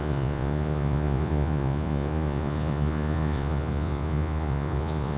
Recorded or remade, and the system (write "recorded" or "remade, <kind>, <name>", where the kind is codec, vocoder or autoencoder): remade, vocoder, Vocos